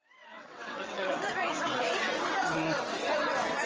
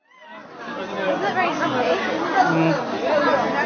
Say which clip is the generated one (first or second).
first